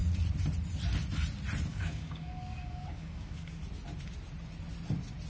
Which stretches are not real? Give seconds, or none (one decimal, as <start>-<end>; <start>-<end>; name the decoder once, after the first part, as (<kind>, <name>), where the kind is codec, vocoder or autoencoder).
1.7-3.6 (codec, DAC)